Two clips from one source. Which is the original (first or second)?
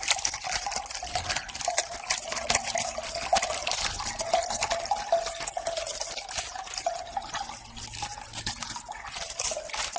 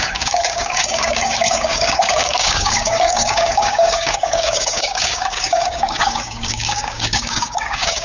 first